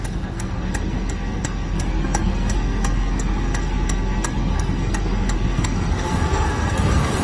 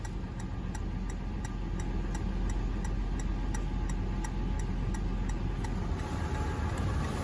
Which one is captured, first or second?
second